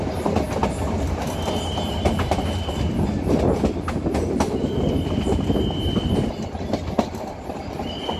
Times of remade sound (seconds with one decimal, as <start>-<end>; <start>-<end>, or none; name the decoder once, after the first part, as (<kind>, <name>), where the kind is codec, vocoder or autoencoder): none